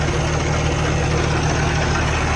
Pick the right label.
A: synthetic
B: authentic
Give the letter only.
B